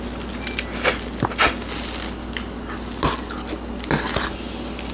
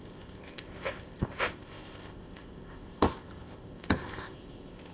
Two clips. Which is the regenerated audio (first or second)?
second